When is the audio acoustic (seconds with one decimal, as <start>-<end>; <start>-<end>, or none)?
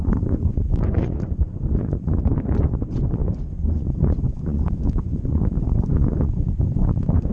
none